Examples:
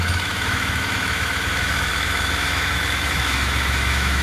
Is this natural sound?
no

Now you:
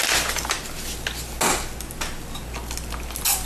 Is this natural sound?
yes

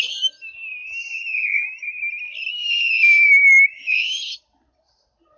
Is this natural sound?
yes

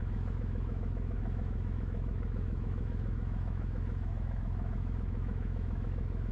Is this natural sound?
no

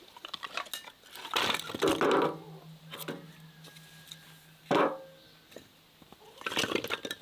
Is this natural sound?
yes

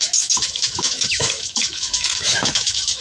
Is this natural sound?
no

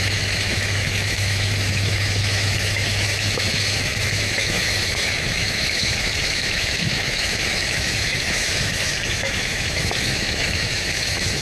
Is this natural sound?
no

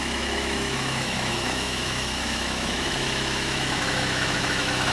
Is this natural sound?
no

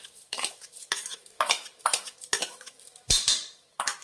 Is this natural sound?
no